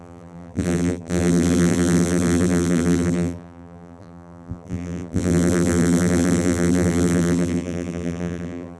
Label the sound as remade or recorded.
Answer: remade